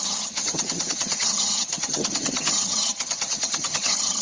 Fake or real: fake